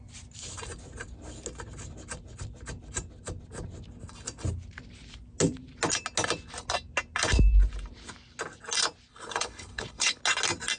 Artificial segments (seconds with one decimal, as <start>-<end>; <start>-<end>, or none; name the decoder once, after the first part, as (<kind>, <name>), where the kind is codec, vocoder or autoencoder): 9.1-10.2 (codec, HILCodec)